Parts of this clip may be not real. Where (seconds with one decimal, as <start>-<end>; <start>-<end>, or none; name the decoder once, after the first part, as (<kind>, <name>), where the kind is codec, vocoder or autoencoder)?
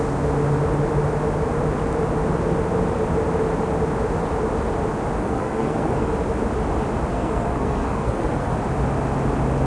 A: 5.2-6.1 (codec, SNAC); 7.1-8.5